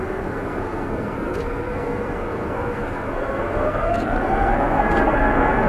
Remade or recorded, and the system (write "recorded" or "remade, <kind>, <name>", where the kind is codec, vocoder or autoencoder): remade, codec, SNAC